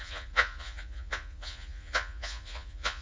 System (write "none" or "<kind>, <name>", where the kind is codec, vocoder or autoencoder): vocoder, Vocos